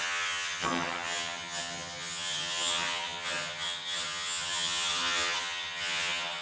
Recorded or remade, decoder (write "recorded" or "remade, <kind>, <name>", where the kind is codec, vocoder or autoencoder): remade, vocoder, HiFi-GAN